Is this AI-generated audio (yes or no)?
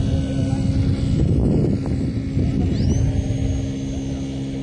no